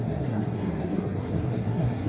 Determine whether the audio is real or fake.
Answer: fake